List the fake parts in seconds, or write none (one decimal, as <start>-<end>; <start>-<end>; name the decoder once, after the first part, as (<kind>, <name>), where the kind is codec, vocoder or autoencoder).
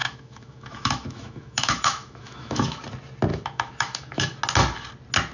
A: 0.0-2.8 (autoencoder, DAC-VAE); 3.3-4.4